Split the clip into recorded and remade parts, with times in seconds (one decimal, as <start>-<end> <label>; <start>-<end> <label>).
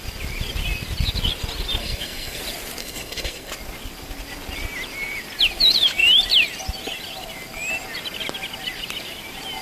0.0-1.8 recorded; 1.8-2.4 remade; 2.4-2.8 recorded; 2.8-3.5 remade; 3.5-9.6 recorded